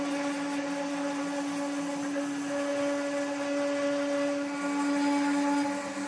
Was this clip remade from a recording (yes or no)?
no